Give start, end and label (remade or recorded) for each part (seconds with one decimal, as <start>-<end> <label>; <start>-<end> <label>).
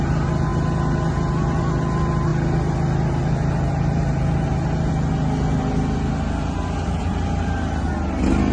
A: 0.0-8.5 recorded